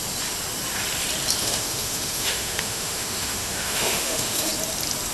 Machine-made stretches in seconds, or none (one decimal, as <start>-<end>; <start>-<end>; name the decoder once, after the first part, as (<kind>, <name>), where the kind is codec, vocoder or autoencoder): 1.4-4.5 (autoencoder, DAC-VAE)